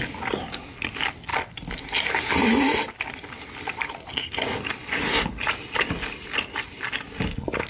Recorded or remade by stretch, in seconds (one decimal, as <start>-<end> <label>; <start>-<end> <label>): 0.0-7.7 recorded